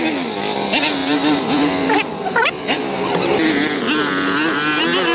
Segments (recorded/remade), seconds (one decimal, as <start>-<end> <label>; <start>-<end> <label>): 0.0-1.0 recorded; 1.0-3.8 remade; 3.8-5.1 recorded